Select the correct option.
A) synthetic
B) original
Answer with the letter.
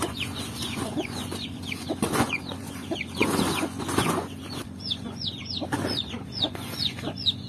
A